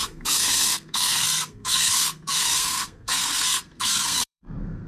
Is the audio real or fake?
fake